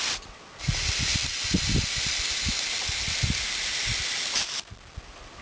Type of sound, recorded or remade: recorded